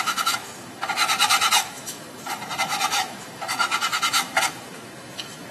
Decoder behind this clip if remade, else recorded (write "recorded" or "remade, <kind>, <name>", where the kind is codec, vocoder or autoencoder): remade, autoencoder, DAC-VAE